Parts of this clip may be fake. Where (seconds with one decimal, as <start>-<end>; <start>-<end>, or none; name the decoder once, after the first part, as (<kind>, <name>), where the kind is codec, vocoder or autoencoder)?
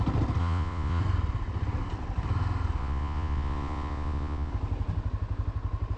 0.4-1.0 (vocoder, Vocos); 2.8-4.5